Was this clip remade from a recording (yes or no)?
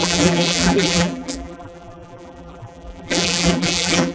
yes